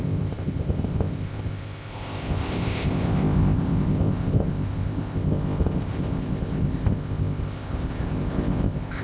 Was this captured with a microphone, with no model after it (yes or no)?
no